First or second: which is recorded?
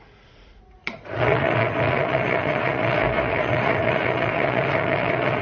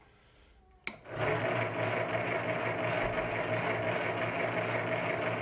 second